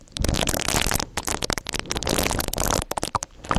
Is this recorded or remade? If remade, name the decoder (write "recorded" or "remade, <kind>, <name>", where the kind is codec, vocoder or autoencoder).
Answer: remade, vocoder, BigVGAN v2